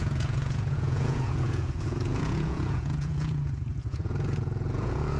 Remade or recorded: remade